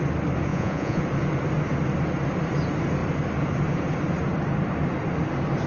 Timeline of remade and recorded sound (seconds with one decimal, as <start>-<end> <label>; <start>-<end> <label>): 0.0-0.5 recorded; 0.5-1.0 remade; 1.0-5.7 recorded